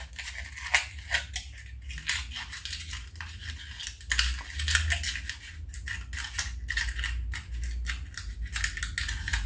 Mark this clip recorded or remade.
recorded